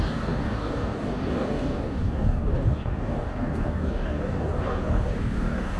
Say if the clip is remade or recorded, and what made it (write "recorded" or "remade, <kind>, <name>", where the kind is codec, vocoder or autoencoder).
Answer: remade, codec, DAC